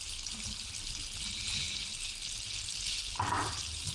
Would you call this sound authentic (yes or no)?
yes